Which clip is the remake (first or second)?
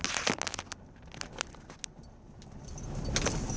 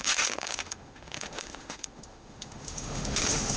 second